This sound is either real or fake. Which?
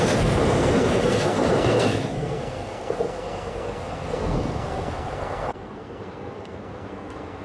fake